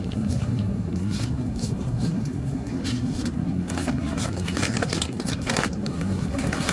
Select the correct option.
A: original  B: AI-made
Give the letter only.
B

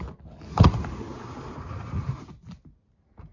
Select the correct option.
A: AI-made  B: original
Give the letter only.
B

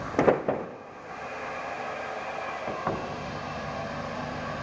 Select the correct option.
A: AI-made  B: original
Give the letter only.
B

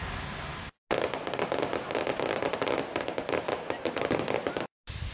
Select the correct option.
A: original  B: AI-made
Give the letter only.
A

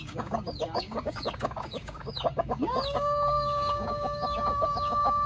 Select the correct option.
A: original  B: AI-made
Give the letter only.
B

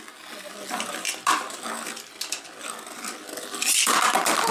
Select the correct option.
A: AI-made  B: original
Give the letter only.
B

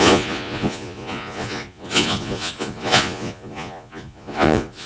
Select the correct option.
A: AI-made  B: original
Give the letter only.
A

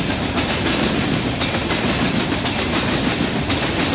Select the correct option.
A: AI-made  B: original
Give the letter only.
B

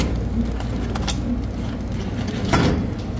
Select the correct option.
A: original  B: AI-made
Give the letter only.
A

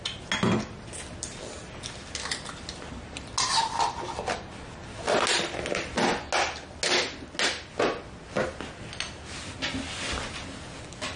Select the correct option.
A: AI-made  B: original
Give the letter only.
B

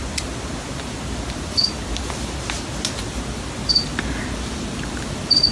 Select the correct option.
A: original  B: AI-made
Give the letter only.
A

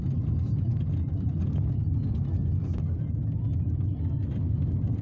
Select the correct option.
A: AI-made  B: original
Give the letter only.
B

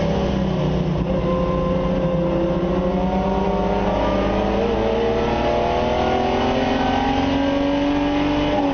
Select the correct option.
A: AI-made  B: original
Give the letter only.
B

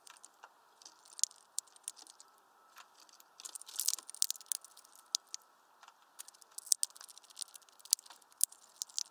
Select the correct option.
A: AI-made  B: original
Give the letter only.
B